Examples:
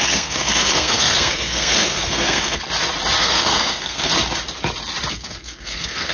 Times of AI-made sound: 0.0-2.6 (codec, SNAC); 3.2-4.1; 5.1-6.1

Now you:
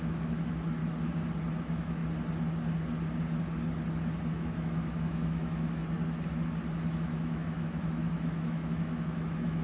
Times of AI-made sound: 0.0-0.8 (autoencoder, DAC-VAE); 1.6-2.0; 4.3-5.8; 6.8-9.6

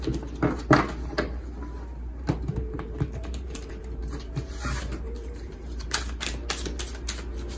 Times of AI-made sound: 2.1-6.2 (vocoder, BigVGAN v2)

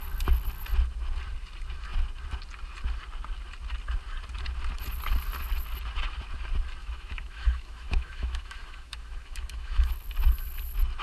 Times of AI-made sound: 6.8-9.9 (autoencoder, DAC-VAE)

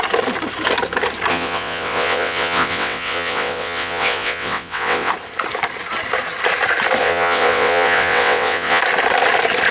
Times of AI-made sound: 1.3-5.1 (vocoder, WaveNeXt); 7.0-8.8

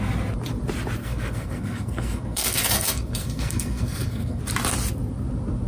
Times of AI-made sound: 1.0-4.4 (codec, SNAC)

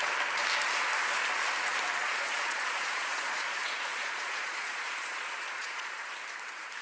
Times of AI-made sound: 2.0-6.1 (vocoder, Vocos)

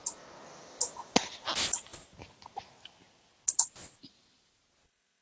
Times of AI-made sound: none